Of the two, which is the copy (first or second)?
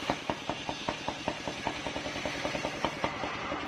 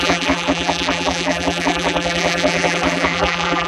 second